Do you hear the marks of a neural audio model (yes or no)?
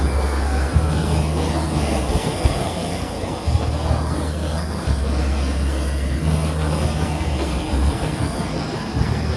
yes